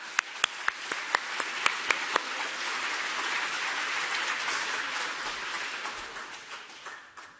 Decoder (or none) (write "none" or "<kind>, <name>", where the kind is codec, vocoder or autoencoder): none